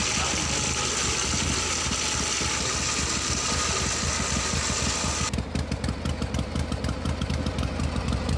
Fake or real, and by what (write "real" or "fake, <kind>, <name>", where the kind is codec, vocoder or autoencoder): real